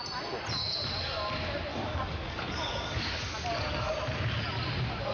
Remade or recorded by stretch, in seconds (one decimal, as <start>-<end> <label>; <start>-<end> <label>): 0.0-1.7 recorded; 1.7-3.9 remade; 3.9-5.1 recorded